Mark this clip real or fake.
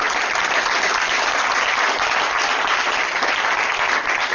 real